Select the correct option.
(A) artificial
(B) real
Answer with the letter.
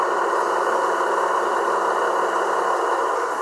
B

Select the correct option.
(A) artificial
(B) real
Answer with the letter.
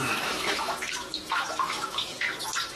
A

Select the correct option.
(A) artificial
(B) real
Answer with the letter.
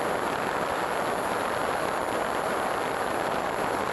B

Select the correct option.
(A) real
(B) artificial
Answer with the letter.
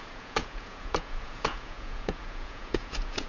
B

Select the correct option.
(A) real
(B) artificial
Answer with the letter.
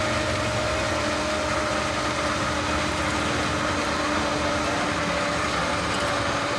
A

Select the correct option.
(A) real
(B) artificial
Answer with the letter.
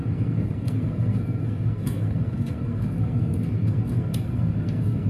B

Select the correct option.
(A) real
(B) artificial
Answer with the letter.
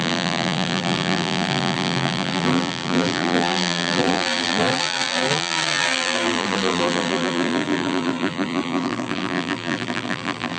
B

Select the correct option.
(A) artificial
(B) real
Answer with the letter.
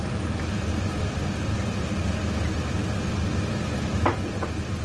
B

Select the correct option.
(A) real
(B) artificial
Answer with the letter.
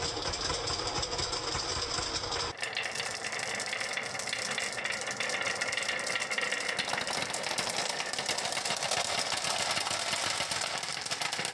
A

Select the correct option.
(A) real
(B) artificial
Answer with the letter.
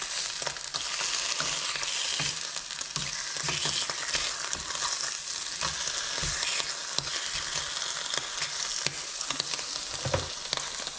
A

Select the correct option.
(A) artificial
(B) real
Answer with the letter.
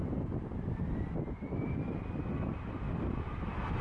B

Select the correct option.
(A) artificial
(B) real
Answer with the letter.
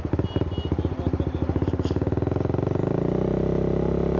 B